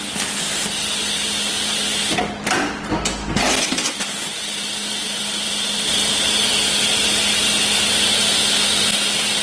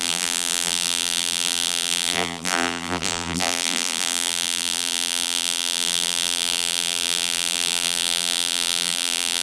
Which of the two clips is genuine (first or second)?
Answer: first